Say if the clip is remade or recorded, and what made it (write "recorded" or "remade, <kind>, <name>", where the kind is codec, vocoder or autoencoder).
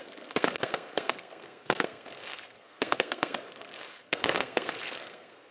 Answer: remade, codec, SNAC